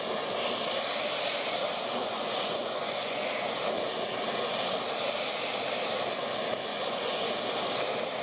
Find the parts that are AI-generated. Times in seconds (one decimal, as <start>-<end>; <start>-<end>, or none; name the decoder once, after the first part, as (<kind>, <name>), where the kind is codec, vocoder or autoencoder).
2.0-3.4 (vocoder, Vocos); 6.7-7.3